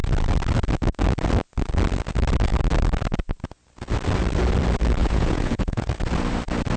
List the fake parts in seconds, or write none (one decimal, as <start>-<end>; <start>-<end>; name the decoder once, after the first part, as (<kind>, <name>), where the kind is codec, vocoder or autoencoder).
5.0-5.9 (vocoder, Vocos)